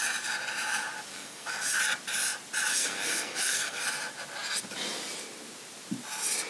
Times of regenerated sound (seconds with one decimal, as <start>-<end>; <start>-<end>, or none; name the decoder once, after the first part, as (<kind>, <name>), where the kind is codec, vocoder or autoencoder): 1.1-1.8 (codec, SNAC); 2.7-3.8